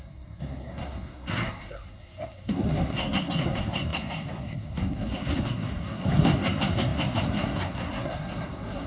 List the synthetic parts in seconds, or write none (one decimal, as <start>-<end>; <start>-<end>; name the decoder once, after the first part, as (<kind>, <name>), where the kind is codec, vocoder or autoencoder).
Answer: 0.0-8.9 (codec, SNAC)